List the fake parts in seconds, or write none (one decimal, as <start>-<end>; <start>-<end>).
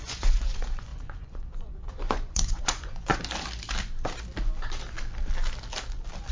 0.0-3.1